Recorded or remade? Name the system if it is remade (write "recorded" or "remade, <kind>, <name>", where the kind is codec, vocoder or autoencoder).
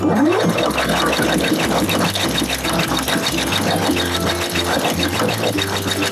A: recorded